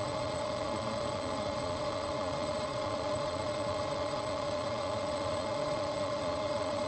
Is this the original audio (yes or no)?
no